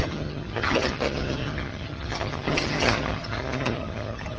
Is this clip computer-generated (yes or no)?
yes